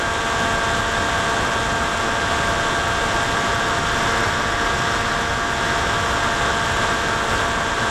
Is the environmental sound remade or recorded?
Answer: recorded